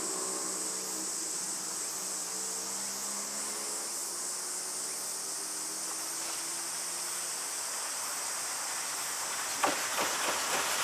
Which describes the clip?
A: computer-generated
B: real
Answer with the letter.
B